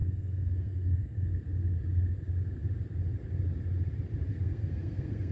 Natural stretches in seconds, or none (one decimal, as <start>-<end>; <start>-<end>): 1.3-4.3